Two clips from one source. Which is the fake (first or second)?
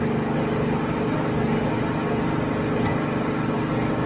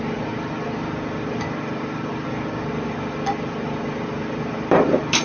second